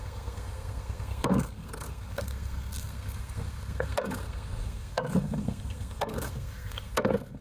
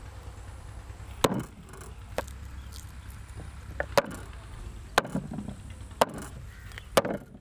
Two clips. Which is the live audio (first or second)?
second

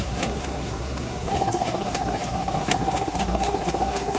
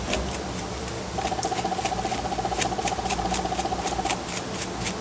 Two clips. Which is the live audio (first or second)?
second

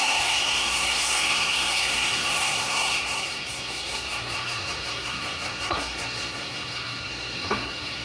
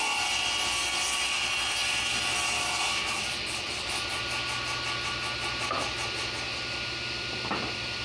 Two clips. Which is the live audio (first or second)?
second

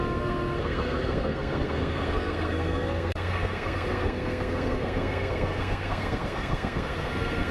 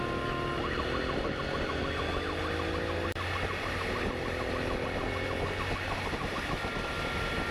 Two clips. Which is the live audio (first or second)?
second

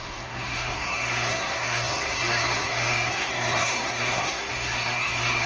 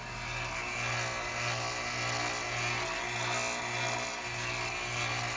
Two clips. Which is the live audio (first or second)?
second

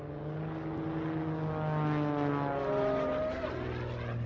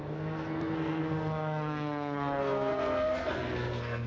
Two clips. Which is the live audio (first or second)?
first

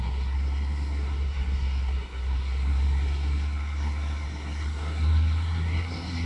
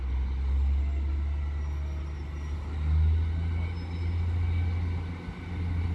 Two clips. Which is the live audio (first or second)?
second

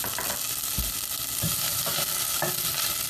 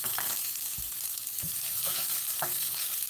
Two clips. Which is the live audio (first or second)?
first